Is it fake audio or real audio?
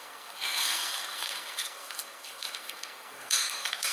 fake